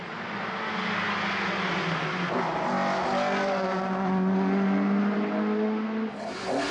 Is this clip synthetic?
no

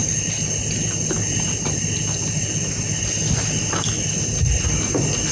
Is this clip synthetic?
no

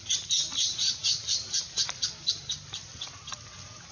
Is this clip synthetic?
yes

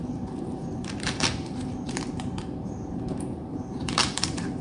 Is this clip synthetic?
yes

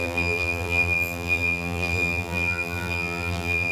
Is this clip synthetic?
yes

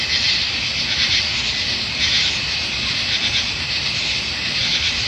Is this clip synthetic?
no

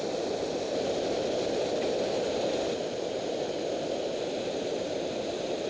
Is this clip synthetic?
no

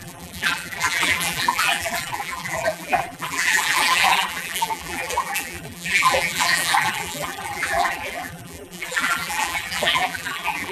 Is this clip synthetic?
yes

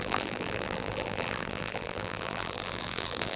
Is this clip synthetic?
yes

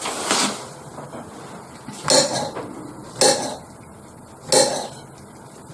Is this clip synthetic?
no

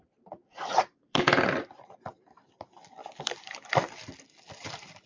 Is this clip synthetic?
yes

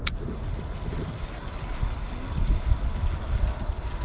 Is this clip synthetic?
no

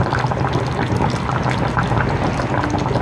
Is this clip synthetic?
no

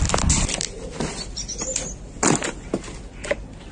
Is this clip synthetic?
no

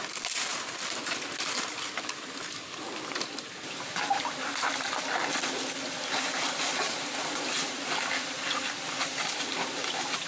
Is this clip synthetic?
no